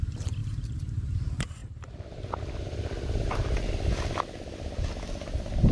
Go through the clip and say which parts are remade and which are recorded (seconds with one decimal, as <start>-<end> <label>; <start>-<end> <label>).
0.0-0.4 recorded; 0.4-0.9 remade; 0.9-1.6 recorded; 1.6-3.7 remade; 3.7-5.7 recorded